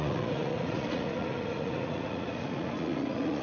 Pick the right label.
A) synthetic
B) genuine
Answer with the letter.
A